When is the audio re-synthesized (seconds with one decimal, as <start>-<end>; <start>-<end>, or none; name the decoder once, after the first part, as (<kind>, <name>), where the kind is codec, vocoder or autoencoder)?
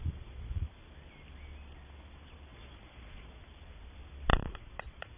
0.0-0.7 (vocoder, Vocos); 2.5-3.4; 4.3-5.2